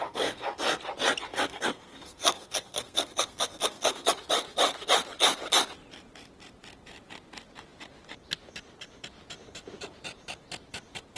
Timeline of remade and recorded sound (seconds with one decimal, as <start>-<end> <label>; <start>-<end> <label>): 0.0-0.8 remade; 0.8-1.3 recorded; 1.3-4.1 remade; 4.1-11.2 recorded